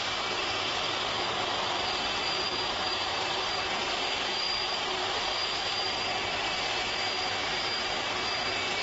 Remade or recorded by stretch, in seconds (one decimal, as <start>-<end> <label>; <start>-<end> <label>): 0.0-0.4 recorded; 0.4-3.7 remade; 3.7-4.3 recorded; 4.3-6.4 remade; 6.4-8.8 recorded